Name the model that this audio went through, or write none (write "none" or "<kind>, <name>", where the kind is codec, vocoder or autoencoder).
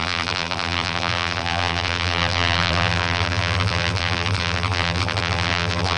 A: vocoder, BigVGAN v2